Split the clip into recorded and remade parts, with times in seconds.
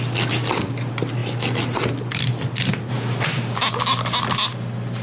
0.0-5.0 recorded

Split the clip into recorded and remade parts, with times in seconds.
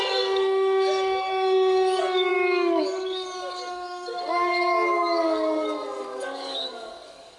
0.0-7.4 remade